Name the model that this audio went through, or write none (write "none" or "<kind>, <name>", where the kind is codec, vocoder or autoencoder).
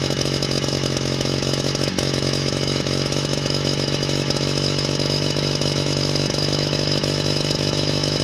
autoencoder, DAC-VAE